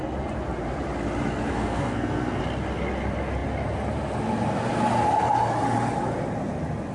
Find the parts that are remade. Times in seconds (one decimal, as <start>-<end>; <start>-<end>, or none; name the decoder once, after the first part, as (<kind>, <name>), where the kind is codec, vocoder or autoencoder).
1.5-2.4 (codec, SNAC)